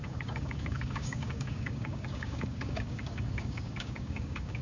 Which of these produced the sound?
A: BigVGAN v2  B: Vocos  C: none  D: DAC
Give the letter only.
D